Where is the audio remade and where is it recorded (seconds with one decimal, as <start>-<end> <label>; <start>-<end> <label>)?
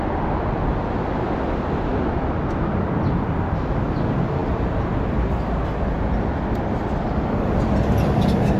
0.0-8.6 recorded